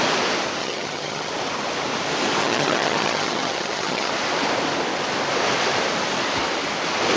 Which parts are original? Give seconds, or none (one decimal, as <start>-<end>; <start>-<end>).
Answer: 0.0-0.6; 1.3-2.4; 4.1-7.2